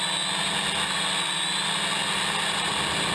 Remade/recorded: recorded